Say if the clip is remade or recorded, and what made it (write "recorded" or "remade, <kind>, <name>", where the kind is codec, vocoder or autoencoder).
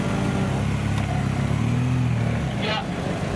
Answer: recorded